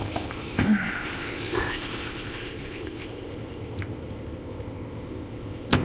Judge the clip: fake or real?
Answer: fake